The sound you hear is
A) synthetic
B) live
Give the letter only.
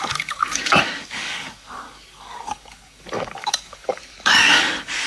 A